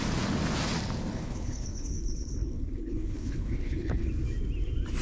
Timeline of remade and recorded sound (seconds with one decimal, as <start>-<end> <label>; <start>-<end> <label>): 0.0-1.1 recorded; 1.1-4.1 remade; 4.1-5.0 recorded